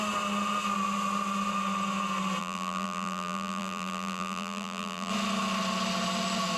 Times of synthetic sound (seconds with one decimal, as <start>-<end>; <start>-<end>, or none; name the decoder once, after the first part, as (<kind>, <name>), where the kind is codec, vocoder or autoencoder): 2.4-5.1 (vocoder, BigVGAN v2)